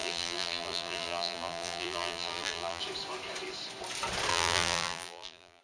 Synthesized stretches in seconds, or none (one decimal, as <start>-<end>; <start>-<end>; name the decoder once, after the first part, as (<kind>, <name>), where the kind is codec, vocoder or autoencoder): 0.0-2.8 (vocoder, BigVGAN v2); 4.3-5.6